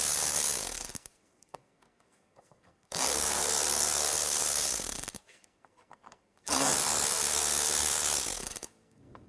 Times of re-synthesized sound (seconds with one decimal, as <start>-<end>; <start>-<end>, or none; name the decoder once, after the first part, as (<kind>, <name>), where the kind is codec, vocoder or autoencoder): 0.0-9.3 (codec, SNAC)